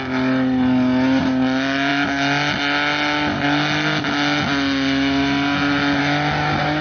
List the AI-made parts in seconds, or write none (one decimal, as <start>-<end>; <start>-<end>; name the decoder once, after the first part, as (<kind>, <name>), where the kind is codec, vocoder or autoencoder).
none